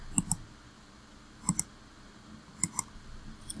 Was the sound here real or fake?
real